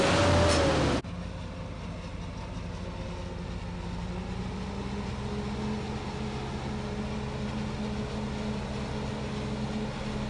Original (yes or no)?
yes